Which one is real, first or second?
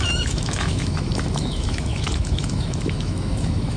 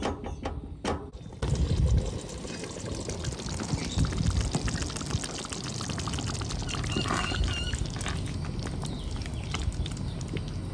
second